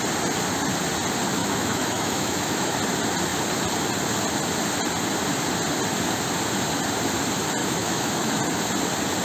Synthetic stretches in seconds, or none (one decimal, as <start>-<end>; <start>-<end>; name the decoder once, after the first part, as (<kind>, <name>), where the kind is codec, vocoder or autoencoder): 1.4-2.7 (autoencoder, DAC-VAE); 7.6-8.4